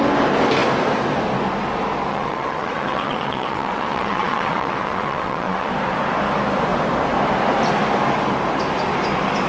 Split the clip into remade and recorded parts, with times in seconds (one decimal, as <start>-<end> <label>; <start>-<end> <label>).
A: 0.0-2.1 recorded; 2.1-5.7 remade; 5.7-9.5 recorded